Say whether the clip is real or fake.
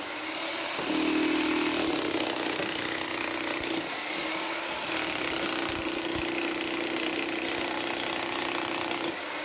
real